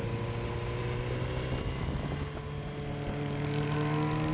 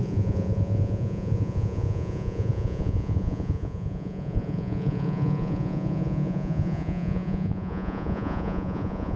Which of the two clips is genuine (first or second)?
first